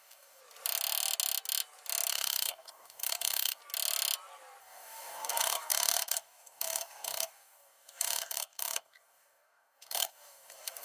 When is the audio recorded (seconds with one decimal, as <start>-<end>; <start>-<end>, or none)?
0.4-2.1; 3.6-4.6